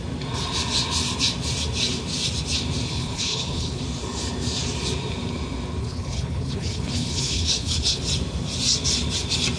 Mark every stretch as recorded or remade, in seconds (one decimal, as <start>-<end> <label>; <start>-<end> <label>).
0.0-2.9 recorded; 2.9-3.8 remade; 3.8-5.8 recorded; 5.8-8.0 remade; 8.0-9.6 recorded

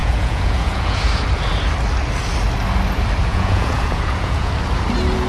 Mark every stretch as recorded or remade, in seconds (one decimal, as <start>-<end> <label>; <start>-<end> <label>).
0.0-1.1 remade; 1.1-3.3 recorded; 3.3-4.5 remade; 4.5-5.3 recorded

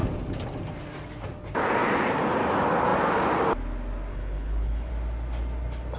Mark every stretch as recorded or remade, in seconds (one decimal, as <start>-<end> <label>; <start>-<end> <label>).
0.0-4.1 recorded; 4.1-4.9 remade; 4.9-6.0 recorded

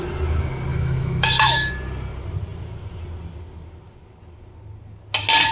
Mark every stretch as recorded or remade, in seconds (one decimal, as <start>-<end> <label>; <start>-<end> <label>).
0.0-0.7 recorded; 0.7-1.7 remade; 1.7-5.5 recorded

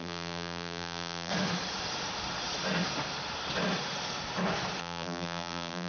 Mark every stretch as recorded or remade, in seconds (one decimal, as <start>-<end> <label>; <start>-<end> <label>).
0.0-1.3 remade; 1.3-4.8 recorded; 4.8-5.9 remade

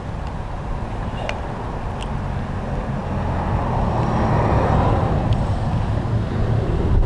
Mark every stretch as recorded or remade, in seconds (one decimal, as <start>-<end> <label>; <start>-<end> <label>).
0.0-7.1 recorded

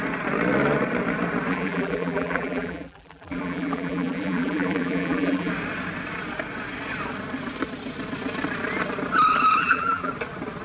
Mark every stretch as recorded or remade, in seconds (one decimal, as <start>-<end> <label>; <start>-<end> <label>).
0.0-1.5 recorded; 1.5-5.5 remade; 5.5-9.6 recorded; 9.6-10.1 remade; 10.1-10.6 recorded

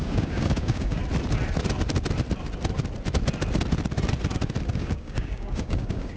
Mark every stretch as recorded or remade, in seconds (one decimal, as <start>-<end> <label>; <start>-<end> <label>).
0.0-1.0 remade; 1.0-4.7 recorded; 4.7-6.2 remade